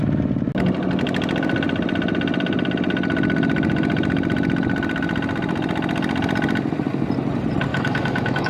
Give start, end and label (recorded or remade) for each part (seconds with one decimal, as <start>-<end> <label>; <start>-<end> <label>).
0.0-7.7 recorded; 7.7-8.5 remade